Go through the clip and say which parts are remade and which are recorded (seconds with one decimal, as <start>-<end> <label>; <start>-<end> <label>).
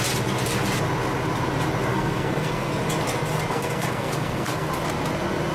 0.0-1.9 recorded; 1.9-2.7 remade; 2.7-3.5 recorded; 3.5-4.7 remade; 4.7-5.5 recorded